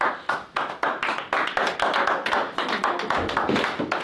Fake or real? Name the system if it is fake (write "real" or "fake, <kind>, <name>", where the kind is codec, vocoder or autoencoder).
real